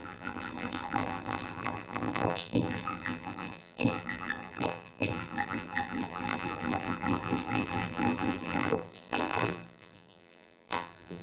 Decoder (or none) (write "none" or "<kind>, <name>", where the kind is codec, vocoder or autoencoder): vocoder, BigVGAN v2